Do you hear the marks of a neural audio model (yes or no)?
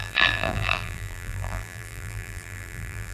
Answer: yes